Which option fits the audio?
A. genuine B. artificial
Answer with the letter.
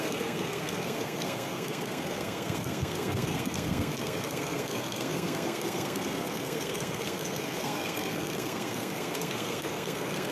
B